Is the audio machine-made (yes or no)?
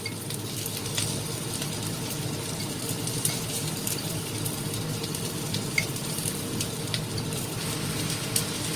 no